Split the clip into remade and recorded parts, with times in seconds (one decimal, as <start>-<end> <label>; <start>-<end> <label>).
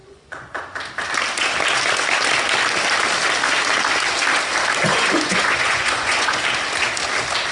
0.0-0.6 remade; 0.6-4.9 recorded; 4.9-6.4 remade; 6.4-7.5 recorded